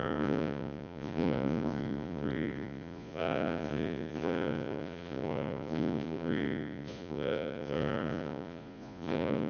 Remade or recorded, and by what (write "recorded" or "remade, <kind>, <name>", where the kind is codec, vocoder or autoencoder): remade, vocoder, Vocos